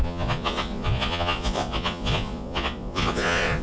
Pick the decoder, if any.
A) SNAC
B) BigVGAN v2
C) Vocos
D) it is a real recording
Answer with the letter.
C